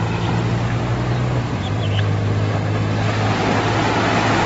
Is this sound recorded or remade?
recorded